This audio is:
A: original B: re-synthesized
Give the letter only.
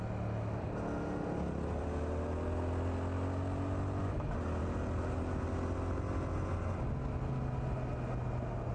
A